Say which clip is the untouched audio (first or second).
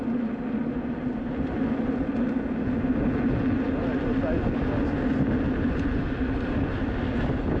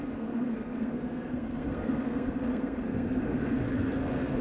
first